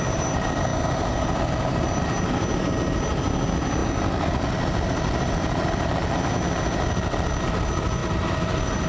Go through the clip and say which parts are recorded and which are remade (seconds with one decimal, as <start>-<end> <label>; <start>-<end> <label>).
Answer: 0.0-8.0 recorded; 8.0-8.9 remade